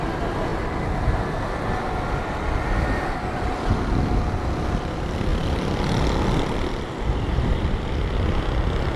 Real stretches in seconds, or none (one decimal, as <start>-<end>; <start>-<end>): 0.0-5.3; 8.4-9.0